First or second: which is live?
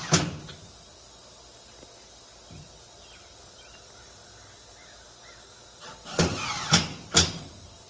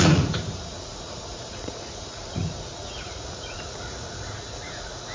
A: first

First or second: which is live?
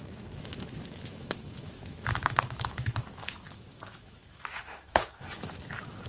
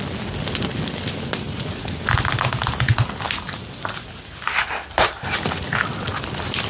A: second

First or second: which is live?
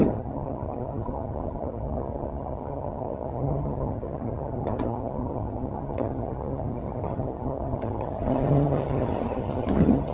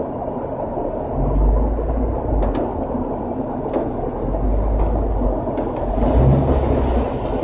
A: second